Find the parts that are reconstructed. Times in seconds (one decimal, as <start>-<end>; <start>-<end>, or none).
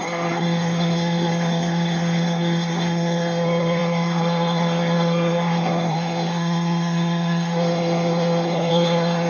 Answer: 0.0-9.3